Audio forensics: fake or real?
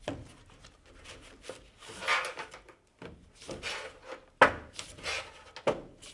real